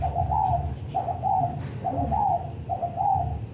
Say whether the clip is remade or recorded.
recorded